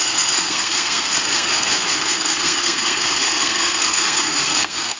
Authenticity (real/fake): fake